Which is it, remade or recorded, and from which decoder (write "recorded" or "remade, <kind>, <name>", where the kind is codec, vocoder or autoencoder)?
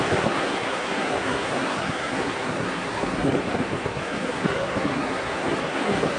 remade, codec, SNAC